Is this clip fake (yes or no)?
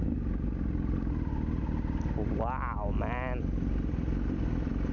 no